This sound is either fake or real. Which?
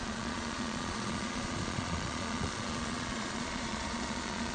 fake